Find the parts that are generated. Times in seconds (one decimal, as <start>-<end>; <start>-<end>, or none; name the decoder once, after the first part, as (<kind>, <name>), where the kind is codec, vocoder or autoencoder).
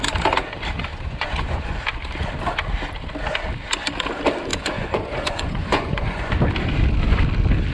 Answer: 0.9-1.8 (vocoder, Vocos); 4.5-6.3